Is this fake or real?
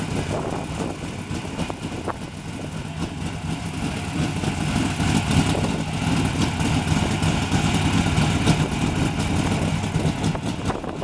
real